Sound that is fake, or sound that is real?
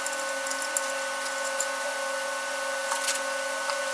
real